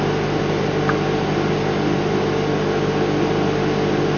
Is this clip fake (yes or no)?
no